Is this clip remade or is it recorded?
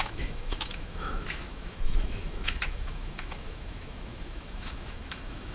remade